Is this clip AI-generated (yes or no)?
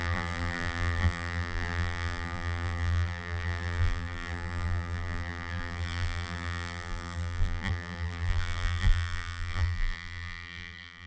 yes